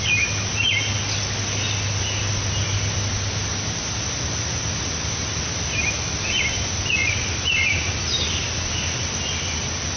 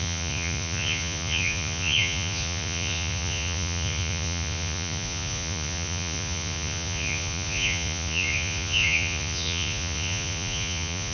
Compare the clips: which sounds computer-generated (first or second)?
second